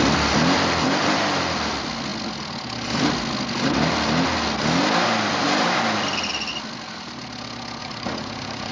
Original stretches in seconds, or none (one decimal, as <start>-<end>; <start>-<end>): 0.0-7.8